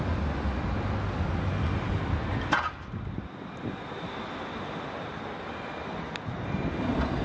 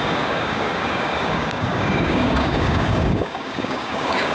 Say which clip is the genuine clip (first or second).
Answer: first